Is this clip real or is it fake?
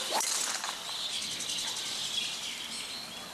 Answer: real